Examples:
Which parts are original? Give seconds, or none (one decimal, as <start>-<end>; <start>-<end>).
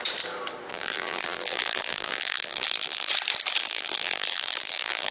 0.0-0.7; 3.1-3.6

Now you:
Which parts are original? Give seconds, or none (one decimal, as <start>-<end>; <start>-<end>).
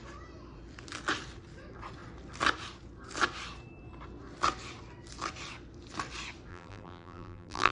0.0-6.5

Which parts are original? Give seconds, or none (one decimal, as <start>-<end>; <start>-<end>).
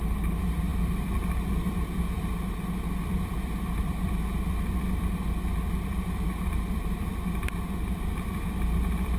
none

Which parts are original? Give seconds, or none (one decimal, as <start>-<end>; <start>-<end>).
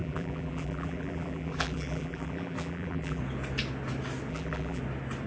3.2-4.3; 4.8-5.3